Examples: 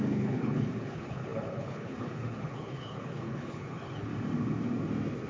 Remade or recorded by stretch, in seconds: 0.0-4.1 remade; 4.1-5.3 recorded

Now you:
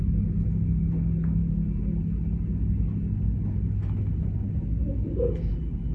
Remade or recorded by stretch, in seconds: 0.0-5.9 recorded

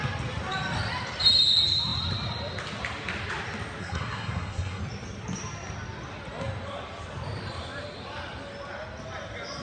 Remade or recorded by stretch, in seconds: 0.0-3.8 recorded; 3.8-4.8 remade; 4.8-9.6 recorded

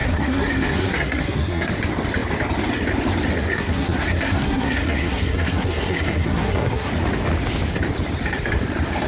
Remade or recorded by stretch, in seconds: 0.0-1.7 remade; 1.7-3.5 recorded; 3.5-6.9 remade; 6.9-9.1 recorded

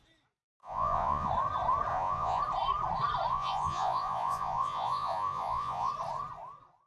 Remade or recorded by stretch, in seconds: 0.0-0.6 recorded; 0.6-1.3 remade; 1.3-1.9 recorded; 1.9-2.4 remade; 2.4-3.3 recorded; 3.3-5.9 remade; 5.9-6.9 recorded

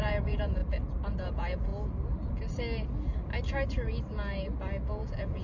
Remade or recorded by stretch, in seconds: 0.0-0.6 remade; 0.6-1.2 recorded; 1.2-1.7 remade; 1.7-4.9 recorded; 4.9-5.4 remade

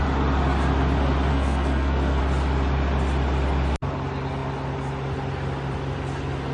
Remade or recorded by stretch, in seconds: 0.0-1.3 recorded; 1.3-2.2 remade; 2.2-6.5 recorded

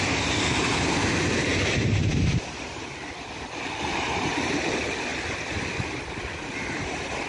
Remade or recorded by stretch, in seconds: 0.0-1.5 remade; 1.5-2.1 recorded; 2.1-7.3 remade